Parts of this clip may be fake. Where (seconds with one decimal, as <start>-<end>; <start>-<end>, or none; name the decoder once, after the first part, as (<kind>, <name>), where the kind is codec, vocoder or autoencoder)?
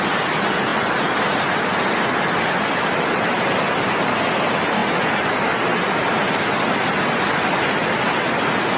none